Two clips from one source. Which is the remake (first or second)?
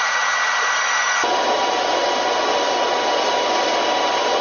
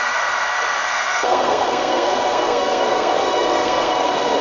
second